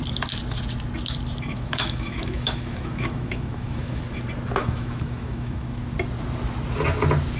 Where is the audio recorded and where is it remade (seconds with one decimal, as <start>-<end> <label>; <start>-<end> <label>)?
0.0-1.5 recorded; 1.5-4.0 remade; 4.0-4.6 recorded; 4.6-5.8 remade; 5.8-7.4 recorded